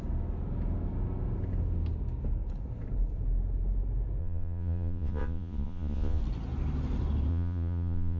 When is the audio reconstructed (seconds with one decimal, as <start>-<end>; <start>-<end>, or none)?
4.2-6.2; 7.3-8.2